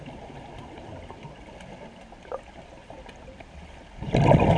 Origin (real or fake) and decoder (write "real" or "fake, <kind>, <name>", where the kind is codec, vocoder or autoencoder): real